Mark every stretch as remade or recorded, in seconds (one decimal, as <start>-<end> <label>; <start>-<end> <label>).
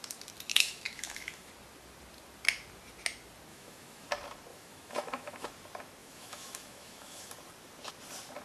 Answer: 0.0-0.5 recorded; 0.5-1.5 remade; 1.5-3.5 recorded; 3.5-4.1 remade; 4.1-4.5 recorded; 4.5-5.5 remade; 5.5-6.0 recorded; 6.0-7.3 remade; 7.3-8.4 recorded